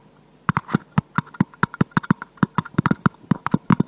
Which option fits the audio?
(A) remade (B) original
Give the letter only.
B